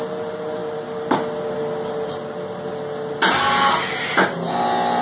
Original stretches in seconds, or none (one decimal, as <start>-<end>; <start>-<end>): 0.0-5.0